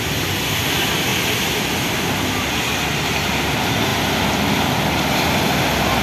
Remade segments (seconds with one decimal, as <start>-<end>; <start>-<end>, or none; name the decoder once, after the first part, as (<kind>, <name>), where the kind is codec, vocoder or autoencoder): 1.1-2.0 (vocoder, BigVGAN v2)